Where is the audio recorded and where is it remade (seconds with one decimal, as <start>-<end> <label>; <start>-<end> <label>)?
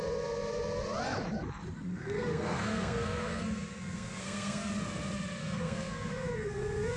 0.0-1.9 recorded; 1.9-4.7 remade; 4.7-5.4 recorded; 5.4-7.0 remade